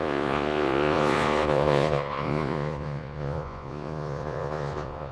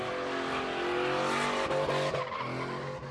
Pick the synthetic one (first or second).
first